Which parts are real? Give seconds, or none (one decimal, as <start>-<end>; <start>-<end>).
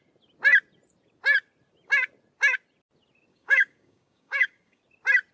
0.0-3.3; 4.8-5.3